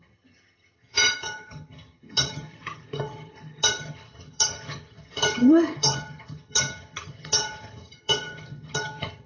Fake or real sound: fake